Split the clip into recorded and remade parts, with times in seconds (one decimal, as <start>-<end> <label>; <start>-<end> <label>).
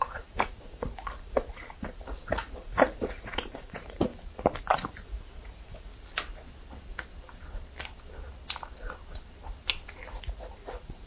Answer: 0.0-4.1 remade; 4.1-4.6 recorded; 4.6-5.9 remade; 5.9-10.2 recorded; 10.2-11.1 remade